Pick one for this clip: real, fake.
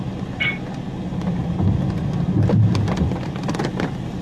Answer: real